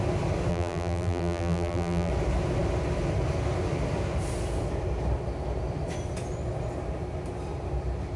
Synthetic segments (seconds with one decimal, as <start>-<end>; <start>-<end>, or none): 0.5-2.1